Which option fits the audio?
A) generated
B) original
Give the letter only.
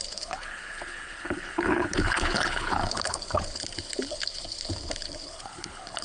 A